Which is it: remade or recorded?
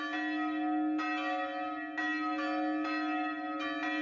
recorded